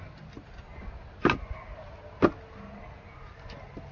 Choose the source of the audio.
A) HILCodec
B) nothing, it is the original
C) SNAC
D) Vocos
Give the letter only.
B